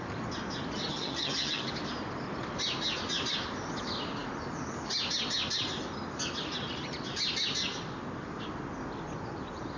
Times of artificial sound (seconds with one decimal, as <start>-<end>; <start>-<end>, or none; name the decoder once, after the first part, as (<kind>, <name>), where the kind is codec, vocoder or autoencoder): 0.9-1.6 (vocoder, HiFi-GAN)